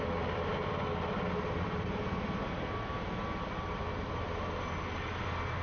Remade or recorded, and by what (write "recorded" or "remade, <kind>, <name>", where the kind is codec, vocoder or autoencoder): recorded